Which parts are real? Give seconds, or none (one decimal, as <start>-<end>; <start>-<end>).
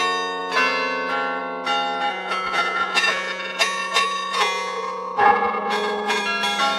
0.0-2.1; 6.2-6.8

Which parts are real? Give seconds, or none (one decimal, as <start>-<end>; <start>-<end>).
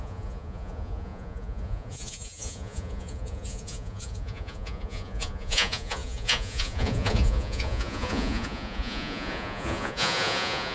none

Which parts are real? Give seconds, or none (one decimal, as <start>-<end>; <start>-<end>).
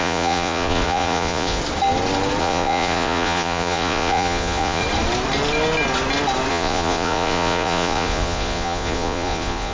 1.6-2.4; 4.8-6.5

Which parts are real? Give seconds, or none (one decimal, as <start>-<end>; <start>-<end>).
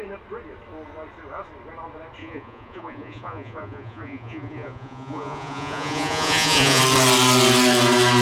0.0-2.2; 6.8-8.2